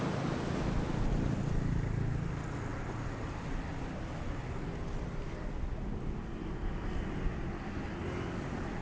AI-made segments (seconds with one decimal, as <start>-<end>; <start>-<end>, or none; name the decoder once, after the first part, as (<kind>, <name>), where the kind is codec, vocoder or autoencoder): none